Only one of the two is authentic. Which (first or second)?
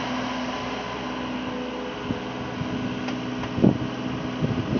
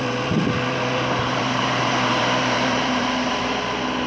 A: first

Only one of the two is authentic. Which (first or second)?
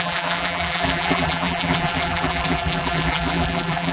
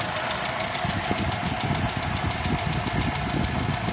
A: second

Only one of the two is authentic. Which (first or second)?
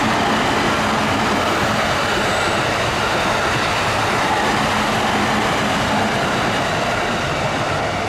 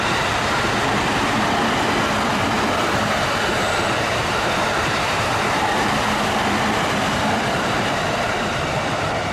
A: first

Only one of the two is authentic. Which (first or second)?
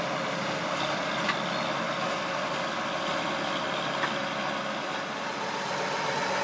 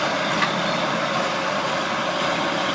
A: first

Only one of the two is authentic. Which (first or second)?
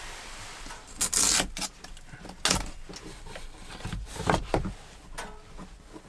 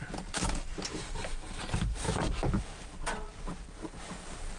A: first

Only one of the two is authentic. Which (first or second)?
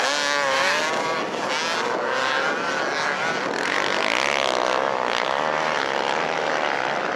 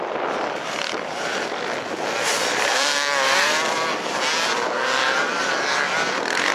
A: first